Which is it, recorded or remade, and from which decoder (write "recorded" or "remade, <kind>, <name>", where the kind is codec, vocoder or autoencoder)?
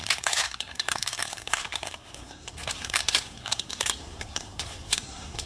remade, codec, SNAC